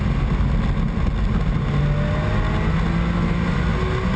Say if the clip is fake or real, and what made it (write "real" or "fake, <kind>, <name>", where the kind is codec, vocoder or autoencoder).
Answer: real